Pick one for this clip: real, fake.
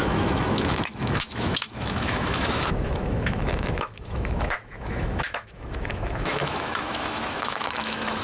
fake